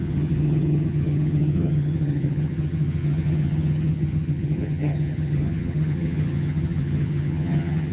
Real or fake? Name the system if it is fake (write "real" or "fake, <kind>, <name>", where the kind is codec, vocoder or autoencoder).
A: fake, vocoder, HiFi-GAN